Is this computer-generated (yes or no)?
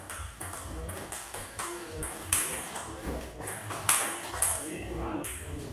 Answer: yes